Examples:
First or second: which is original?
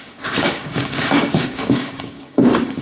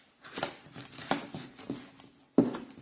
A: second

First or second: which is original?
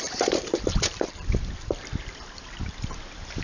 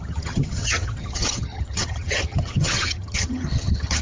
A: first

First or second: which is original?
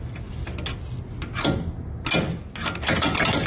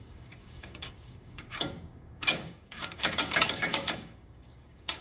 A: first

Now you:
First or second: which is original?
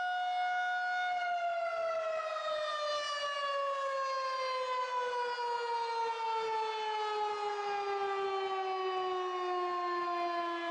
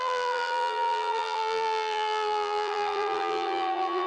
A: first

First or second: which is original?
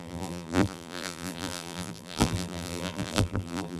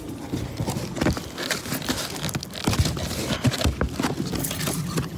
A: second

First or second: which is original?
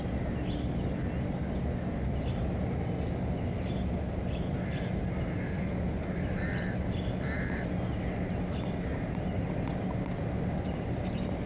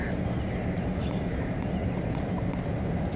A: first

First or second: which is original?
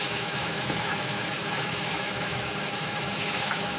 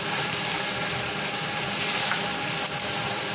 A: second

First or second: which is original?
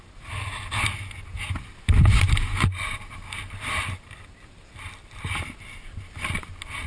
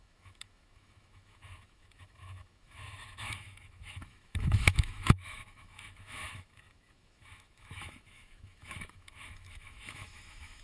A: first